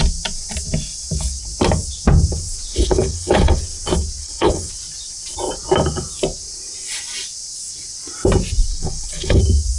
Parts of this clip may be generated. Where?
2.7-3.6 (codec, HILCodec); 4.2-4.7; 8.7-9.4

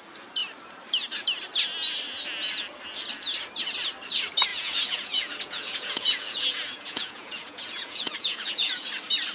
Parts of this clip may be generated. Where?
4.5-8.9 (vocoder, Vocos)